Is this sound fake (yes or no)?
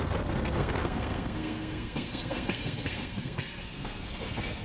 yes